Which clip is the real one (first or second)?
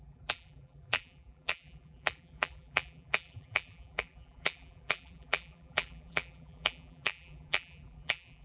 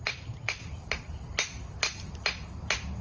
second